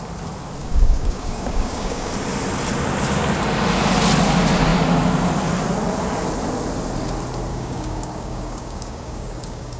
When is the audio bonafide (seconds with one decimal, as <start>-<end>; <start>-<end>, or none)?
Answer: 0.0-0.6; 2.1-7.5